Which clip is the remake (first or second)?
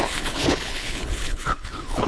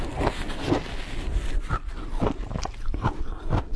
first